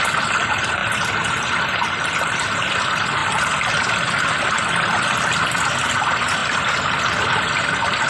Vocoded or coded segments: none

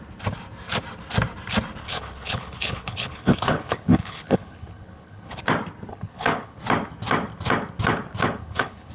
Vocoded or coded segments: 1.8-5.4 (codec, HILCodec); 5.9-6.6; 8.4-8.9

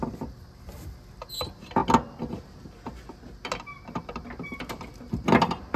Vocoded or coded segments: none